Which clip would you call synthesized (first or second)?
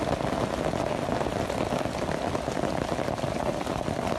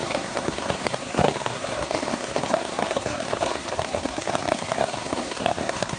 second